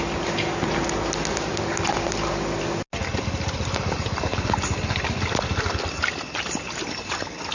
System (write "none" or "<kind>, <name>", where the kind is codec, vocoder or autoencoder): none